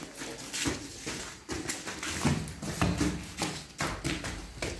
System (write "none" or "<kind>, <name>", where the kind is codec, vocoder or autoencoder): none